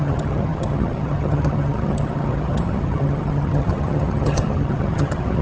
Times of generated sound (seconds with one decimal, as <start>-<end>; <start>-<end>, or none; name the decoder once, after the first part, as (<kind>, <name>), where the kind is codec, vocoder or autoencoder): 0.0-5.4 (vocoder, HiFi-GAN)